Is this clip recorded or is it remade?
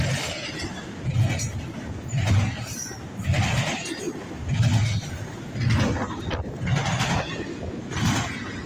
recorded